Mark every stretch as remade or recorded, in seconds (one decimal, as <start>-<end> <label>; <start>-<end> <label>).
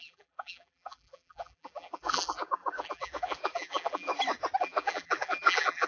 0.0-4.1 remade; 4.1-4.6 recorded; 4.6-5.9 remade